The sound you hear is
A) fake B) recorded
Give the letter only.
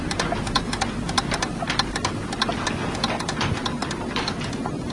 A